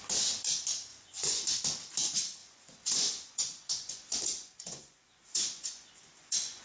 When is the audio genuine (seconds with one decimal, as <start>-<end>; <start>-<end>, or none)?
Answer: 0.0-0.9; 1.5-2.4